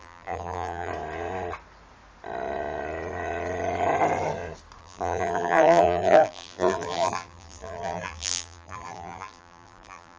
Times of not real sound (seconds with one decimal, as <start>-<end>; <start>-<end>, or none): 0.0-0.9; 4.8-10.2